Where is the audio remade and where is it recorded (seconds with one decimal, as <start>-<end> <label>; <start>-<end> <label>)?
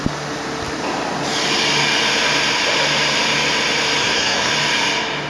0.0-4.0 recorded; 4.0-4.5 remade; 4.5-5.3 recorded